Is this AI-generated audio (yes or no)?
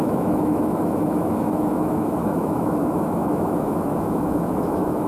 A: yes